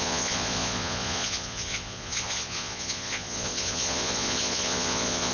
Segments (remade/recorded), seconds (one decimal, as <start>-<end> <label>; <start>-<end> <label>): 0.0-5.3 remade